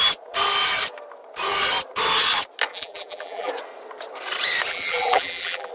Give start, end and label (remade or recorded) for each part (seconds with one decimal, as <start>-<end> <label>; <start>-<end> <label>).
0.0-2.7 recorded; 2.7-3.5 remade; 3.5-4.7 recorded; 4.7-5.7 remade